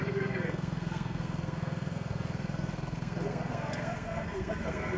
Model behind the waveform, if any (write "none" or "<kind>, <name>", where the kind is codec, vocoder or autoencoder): codec, SNAC